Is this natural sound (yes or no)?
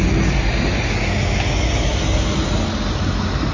yes